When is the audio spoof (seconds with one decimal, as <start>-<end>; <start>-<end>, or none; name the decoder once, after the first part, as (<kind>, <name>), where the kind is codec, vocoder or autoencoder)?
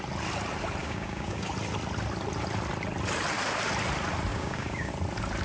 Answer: 0.8-1.5 (codec, DAC); 4.3-4.9